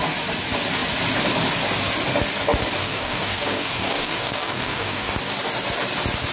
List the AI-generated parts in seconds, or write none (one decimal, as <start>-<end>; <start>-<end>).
2.8-5.1